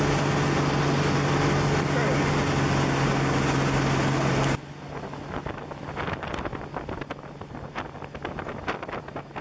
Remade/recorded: recorded